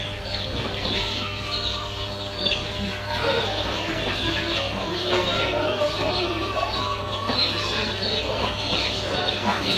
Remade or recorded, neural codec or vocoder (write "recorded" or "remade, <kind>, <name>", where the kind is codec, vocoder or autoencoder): remade, codec, SNAC